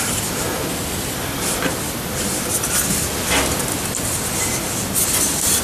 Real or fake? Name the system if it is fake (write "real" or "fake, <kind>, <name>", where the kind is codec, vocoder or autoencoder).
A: real